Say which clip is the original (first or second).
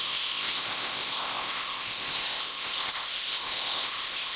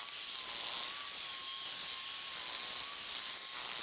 second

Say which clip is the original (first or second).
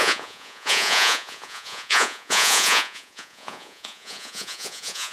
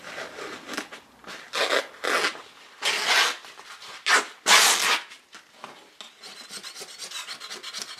second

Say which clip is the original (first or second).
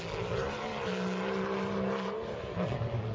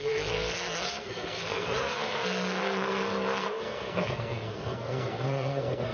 first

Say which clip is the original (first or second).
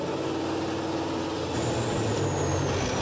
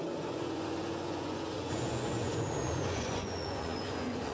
first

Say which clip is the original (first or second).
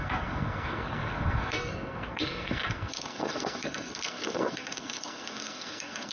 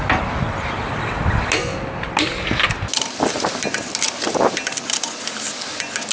second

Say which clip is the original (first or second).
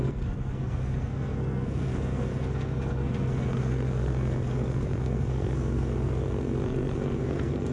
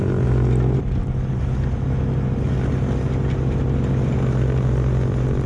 second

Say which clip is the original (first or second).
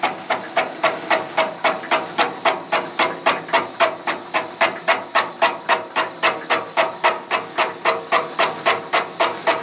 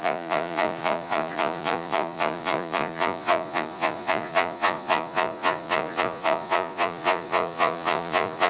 first